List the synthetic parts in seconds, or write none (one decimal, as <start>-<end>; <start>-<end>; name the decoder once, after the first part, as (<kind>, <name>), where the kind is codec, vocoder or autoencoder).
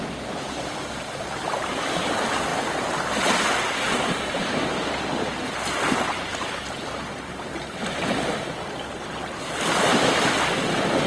none